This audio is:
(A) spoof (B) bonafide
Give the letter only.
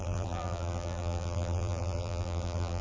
A